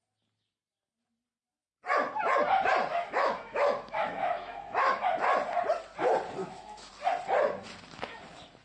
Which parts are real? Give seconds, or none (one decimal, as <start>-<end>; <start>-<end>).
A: 0.0-2.9; 5.0-6.4; 6.9-8.6